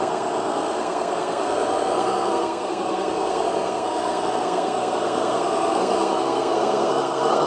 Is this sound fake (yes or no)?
yes